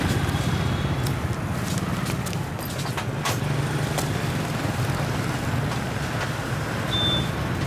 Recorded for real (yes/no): yes